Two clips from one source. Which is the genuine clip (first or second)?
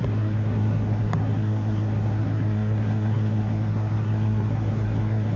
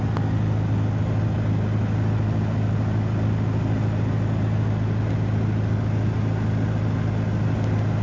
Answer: second